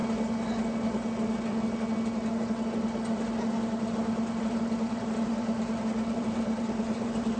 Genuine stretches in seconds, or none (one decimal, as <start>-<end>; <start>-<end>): 0.0-4.4